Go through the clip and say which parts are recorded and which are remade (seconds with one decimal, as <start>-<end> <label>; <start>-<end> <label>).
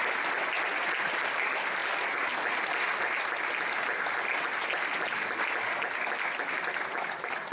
0.0-7.5 recorded